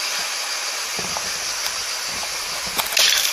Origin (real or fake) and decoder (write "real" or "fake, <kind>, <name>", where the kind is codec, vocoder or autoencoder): real